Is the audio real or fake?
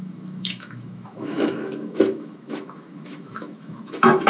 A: fake